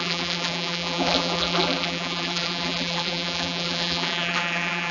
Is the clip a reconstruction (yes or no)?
yes